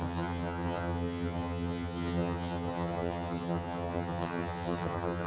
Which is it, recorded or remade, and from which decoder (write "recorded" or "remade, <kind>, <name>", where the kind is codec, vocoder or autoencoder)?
remade, vocoder, HiFi-GAN